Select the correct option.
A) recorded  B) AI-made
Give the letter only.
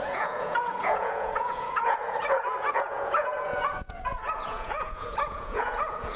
B